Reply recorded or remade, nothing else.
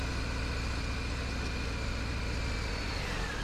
recorded